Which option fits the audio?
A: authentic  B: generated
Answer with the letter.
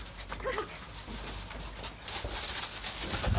A